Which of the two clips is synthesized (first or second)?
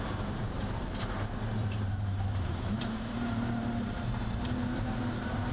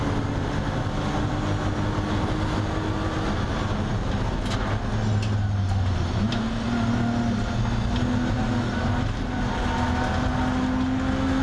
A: first